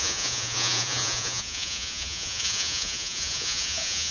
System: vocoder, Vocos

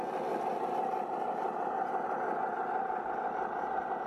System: none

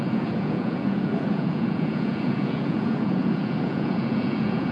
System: vocoder, Vocos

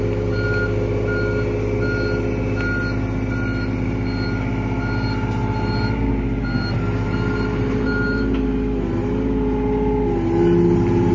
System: none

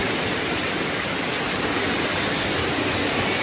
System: none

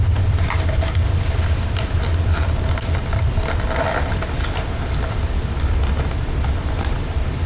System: vocoder, BigVGAN v2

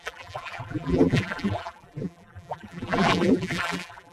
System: vocoder, BigVGAN v2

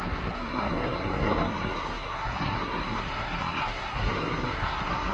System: codec, SNAC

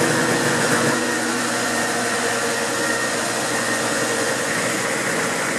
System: vocoder, Vocos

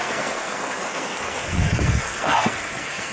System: codec, SNAC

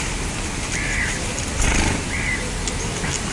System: none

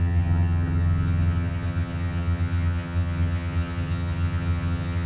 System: vocoder, HiFi-GAN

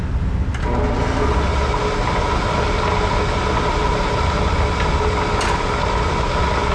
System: none